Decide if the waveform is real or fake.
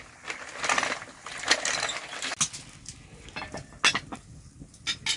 real